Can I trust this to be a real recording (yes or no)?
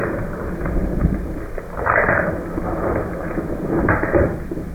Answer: no